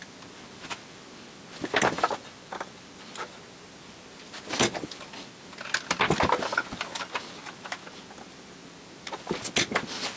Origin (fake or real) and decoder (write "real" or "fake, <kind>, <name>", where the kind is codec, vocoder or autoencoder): real